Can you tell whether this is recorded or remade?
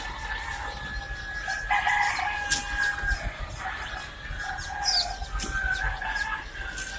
recorded